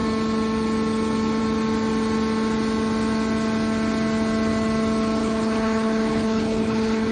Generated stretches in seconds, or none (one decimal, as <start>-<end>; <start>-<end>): 5.2-7.1